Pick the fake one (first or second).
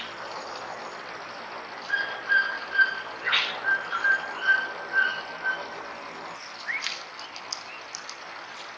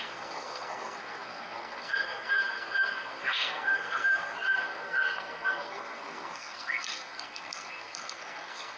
second